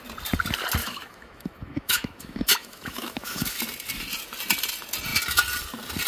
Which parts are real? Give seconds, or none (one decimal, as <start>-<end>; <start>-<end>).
0.0-0.8; 3.6-6.1